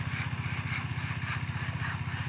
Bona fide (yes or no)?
yes